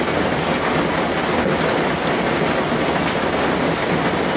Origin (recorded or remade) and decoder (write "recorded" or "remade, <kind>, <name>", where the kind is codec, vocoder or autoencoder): recorded